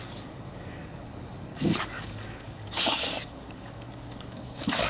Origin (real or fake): fake